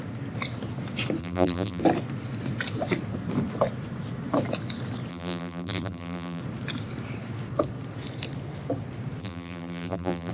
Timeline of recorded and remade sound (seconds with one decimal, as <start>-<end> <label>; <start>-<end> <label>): 0.0-1.2 recorded; 1.2-1.8 remade; 1.8-5.1 recorded; 5.1-6.4 remade; 6.4-9.2 recorded; 9.2-10.3 remade